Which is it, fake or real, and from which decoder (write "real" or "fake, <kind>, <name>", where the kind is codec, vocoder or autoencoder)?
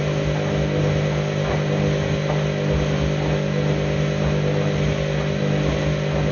real